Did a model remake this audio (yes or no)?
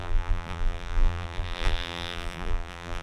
yes